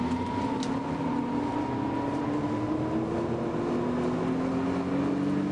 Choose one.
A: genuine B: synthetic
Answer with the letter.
A